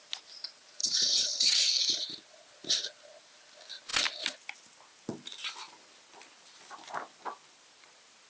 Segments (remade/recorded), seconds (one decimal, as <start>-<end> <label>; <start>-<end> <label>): 0.0-0.8 recorded; 0.8-1.8 remade; 1.8-8.3 recorded